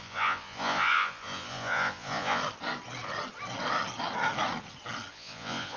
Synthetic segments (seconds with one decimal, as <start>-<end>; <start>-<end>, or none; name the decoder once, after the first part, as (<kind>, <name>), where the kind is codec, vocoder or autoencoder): 0.0-2.4 (vocoder, Vocos); 5.1-5.8